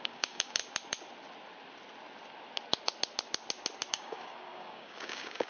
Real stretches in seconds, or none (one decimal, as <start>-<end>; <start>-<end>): 0.6-3.9